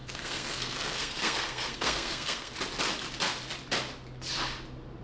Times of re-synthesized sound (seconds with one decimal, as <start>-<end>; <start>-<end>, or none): 0.0-2.5